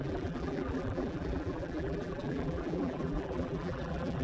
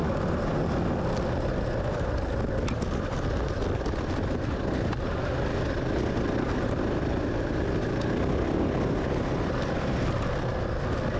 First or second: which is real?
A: second